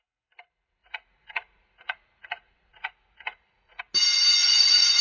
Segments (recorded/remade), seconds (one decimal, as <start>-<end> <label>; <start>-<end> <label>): 0.0-0.8 recorded; 0.8-3.8 remade; 3.8-4.4 recorded; 4.4-5.0 remade

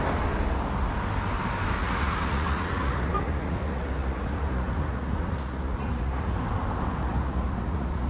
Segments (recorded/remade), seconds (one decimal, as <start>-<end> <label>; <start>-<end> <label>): 0.0-1.8 recorded; 1.8-6.4 remade; 6.4-7.0 recorded; 7.0-8.1 remade

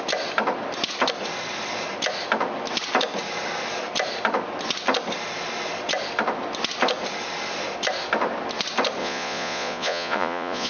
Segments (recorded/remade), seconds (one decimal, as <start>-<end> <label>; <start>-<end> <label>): 0.0-9.0 recorded; 9.0-10.7 remade

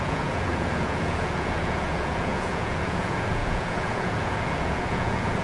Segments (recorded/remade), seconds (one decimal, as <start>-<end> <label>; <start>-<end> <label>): 0.0-5.4 remade